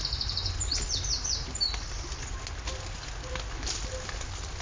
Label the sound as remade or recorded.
recorded